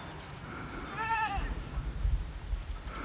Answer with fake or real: real